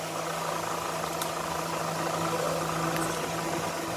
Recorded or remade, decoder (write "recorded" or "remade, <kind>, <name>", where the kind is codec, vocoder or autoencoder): recorded